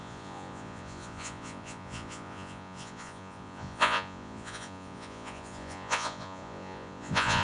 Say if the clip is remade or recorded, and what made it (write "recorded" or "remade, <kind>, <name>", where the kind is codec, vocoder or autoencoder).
remade, vocoder, Vocos